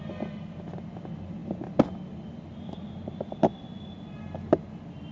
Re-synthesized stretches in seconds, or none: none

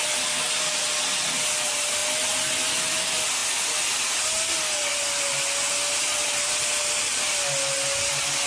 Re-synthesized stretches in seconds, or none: none

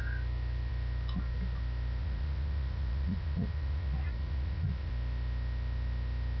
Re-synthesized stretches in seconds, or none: 2.0-4.9 (vocoder, Vocos)